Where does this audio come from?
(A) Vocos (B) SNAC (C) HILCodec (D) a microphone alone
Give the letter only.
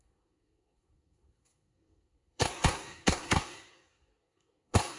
B